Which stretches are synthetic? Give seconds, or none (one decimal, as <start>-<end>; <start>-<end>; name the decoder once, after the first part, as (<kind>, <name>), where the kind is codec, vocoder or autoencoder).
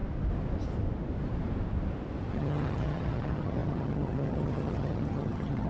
2.3-5.7 (vocoder, HiFi-GAN)